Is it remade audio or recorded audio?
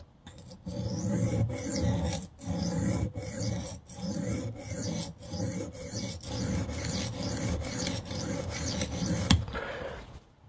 recorded